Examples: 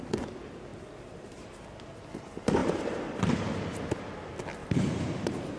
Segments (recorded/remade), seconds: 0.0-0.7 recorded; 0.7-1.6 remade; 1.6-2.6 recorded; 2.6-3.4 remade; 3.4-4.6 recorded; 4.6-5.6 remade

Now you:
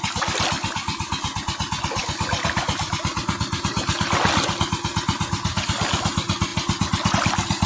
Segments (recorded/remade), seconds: 0.0-7.7 recorded

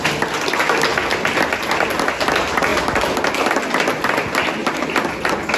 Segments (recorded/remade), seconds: 0.0-5.6 recorded

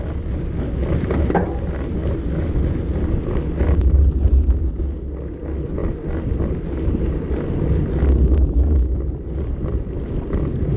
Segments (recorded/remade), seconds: 0.0-10.8 recorded

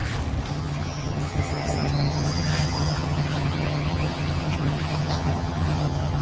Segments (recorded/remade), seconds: 0.0-0.5 recorded; 0.5-6.2 remade

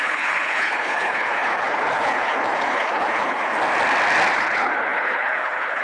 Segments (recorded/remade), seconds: 0.0-3.5 remade; 3.5-4.3 recorded; 4.3-5.8 remade

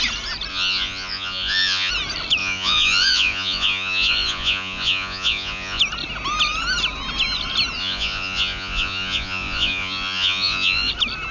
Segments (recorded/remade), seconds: 0.0-0.5 recorded; 0.5-1.9 remade; 1.9-2.4 recorded; 2.4-5.8 remade; 5.8-7.8 recorded; 7.8-10.9 remade; 10.9-11.3 recorded

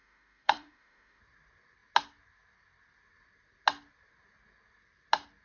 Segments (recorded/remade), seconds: 0.0-1.2 remade; 1.2-5.4 recorded